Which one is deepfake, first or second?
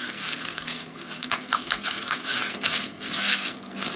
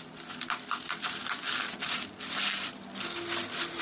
first